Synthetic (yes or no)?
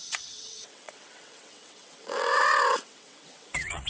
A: yes